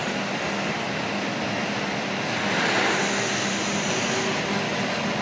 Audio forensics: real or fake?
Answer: real